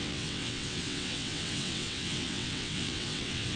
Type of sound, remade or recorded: remade